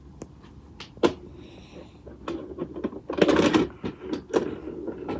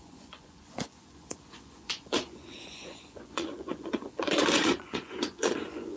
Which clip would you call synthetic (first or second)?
second